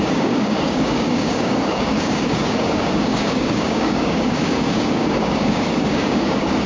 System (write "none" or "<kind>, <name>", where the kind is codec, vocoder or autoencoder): codec, DAC